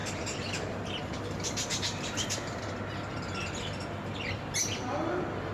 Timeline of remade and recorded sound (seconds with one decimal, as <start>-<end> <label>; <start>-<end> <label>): 0.0-2.6 remade; 2.6-5.5 recorded